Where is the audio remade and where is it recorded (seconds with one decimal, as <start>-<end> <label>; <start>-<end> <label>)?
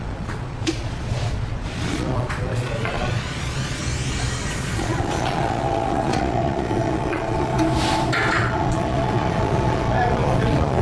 0.0-3.8 remade; 3.8-4.5 recorded; 4.5-7.5 remade; 7.5-8.3 recorded; 8.3-10.8 remade